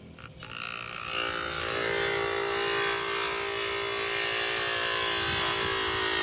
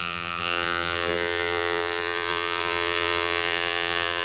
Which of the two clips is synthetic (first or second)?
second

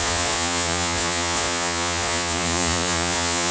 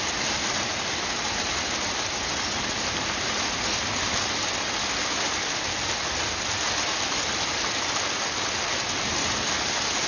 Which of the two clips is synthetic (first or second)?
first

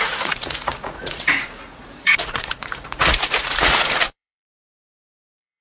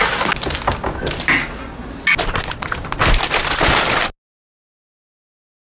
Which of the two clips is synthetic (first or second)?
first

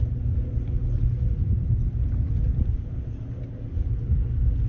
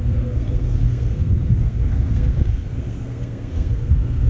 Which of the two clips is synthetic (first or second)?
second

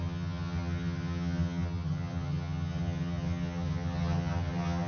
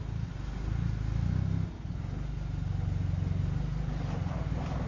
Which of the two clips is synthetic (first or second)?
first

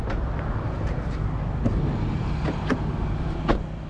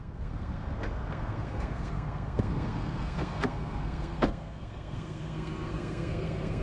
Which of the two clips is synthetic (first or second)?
second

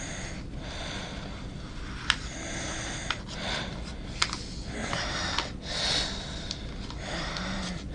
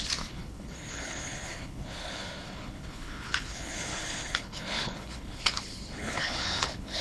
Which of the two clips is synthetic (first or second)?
second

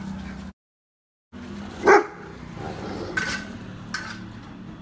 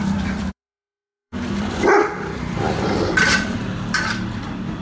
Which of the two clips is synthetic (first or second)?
second